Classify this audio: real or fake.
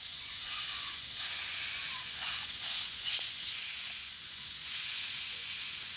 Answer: fake